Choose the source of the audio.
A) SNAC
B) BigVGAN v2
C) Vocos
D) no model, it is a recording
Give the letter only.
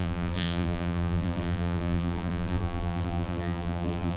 B